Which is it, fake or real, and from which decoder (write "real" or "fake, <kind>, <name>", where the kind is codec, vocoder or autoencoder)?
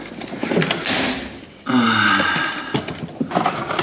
real